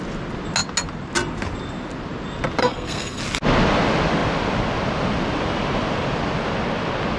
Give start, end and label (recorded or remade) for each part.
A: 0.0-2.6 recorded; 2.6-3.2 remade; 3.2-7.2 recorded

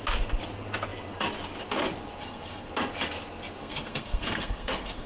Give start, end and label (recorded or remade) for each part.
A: 0.0-2.2 recorded; 2.2-2.7 remade; 2.7-3.6 recorded; 3.6-5.1 remade

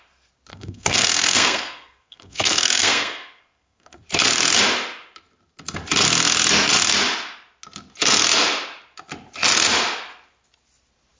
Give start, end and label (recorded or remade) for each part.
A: 0.0-0.5 recorded; 0.5-4.0 remade; 4.0-11.2 recorded

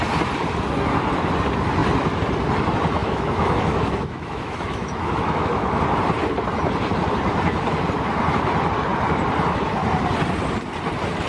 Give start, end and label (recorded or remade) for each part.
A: 0.0-3.0 recorded; 3.0-5.8 remade; 5.8-11.3 recorded

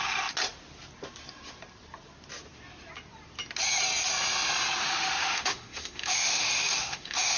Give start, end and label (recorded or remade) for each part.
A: 0.0-4.8 recorded; 4.8-7.4 remade

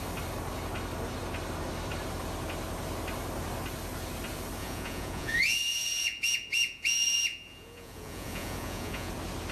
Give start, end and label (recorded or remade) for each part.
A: 0.0-4.6 recorded; 4.6-9.1 remade; 9.1-9.5 recorded

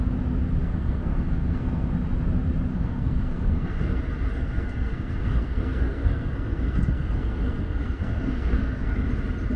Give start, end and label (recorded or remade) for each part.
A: 0.0-0.6 recorded; 0.6-1.9 remade; 1.9-2.7 recorded; 2.7-4.0 remade; 4.0-4.4 recorded; 4.4-9.1 remade; 9.1-9.6 recorded

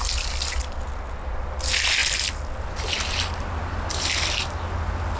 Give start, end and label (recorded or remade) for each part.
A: 0.0-5.2 recorded